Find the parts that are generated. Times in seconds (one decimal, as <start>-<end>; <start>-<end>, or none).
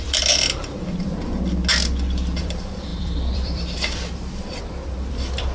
0.0-1.3; 2.4-5.5